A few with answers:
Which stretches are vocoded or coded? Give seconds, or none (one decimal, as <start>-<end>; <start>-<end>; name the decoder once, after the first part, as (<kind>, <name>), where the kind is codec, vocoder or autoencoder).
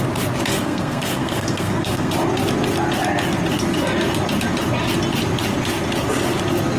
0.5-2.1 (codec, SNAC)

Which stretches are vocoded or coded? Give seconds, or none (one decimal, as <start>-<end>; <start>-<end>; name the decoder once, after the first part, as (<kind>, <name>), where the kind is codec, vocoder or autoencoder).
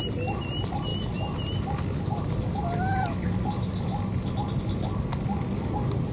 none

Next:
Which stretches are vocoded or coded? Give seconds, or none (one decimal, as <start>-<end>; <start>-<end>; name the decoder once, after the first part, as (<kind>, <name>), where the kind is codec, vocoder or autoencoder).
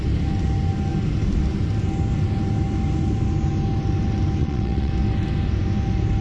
4.4-4.9 (vocoder, WaveNeXt)